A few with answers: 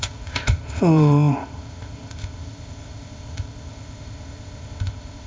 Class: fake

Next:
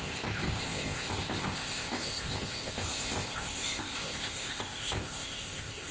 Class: fake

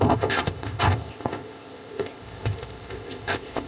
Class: fake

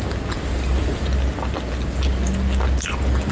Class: real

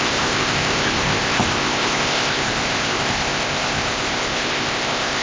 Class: fake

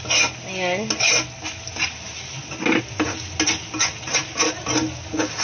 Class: real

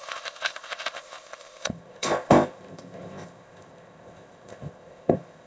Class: fake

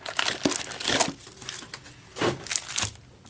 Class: real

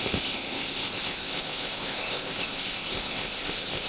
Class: fake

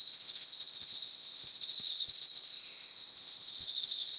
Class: fake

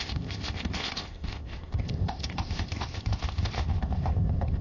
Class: fake